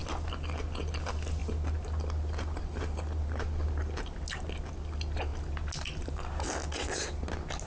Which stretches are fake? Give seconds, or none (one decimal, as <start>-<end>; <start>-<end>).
none